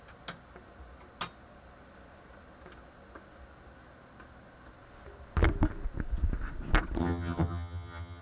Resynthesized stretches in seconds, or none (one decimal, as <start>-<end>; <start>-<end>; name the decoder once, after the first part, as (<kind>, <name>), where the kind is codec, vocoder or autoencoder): 7.0-8.2 (vocoder, HiFi-GAN)